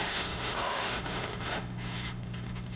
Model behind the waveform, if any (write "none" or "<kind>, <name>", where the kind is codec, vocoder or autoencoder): autoencoder, DAC-VAE